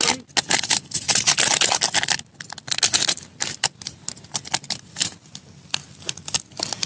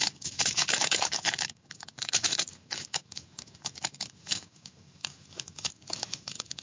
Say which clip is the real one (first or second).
first